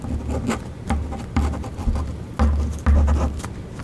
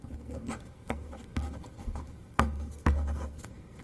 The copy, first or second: second